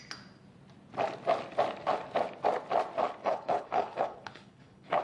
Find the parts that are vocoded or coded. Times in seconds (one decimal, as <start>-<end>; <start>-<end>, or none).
3.2-5.0